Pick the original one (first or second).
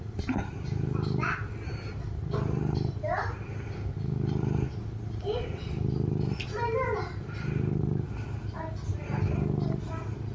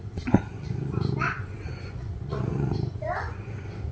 first